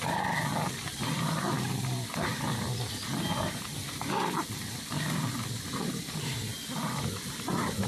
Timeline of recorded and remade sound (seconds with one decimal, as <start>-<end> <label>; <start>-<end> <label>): 0.0-2.3 recorded; 2.3-2.9 remade; 2.9-3.8 recorded; 3.8-7.9 remade